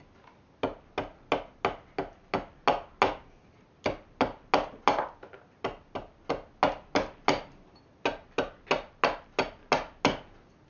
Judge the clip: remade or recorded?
recorded